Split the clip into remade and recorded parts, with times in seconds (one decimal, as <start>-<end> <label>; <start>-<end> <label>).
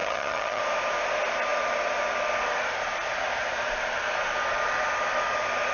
0.0-0.6 remade; 0.6-5.7 recorded